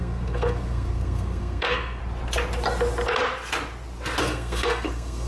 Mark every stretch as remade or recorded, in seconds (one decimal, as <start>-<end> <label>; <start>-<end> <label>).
0.0-2.0 remade; 2.0-4.2 recorded; 4.2-5.3 remade